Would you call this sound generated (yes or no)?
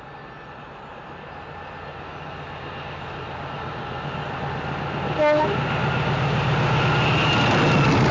no